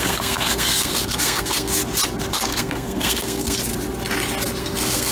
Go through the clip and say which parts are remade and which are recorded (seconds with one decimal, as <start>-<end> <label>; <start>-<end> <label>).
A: 0.0-1.8 remade; 1.8-2.3 recorded; 2.3-3.7 remade; 3.7-4.6 recorded; 4.6-5.1 remade